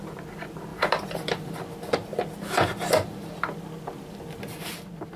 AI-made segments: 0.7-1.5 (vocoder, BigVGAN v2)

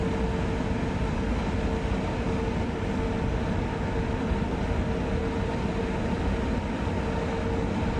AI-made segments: none

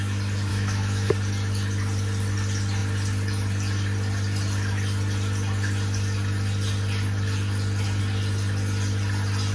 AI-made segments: 0.5-1.1 (autoencoder, DAC-VAE)

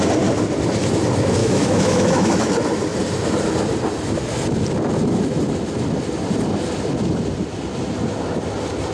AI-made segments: 1.4-2.5 (autoencoder, DAC-VAE)

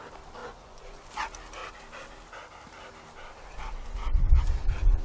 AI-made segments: 0.4-1.1 (vocoder, Vocos)

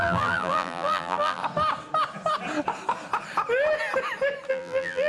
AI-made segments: 0.0-1.4 (vocoder, BigVGAN v2); 4.5-5.1